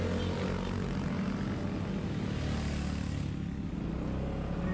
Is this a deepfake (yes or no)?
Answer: no